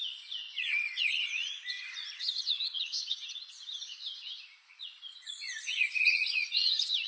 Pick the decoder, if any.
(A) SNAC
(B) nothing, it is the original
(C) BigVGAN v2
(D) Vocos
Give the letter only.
D